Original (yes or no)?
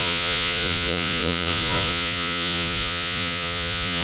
no